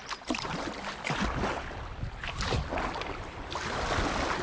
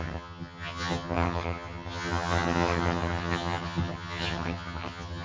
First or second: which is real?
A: first